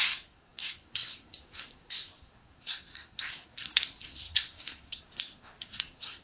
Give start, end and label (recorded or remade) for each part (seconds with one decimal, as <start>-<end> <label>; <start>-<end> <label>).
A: 0.0-6.2 remade